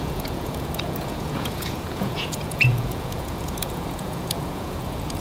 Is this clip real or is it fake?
fake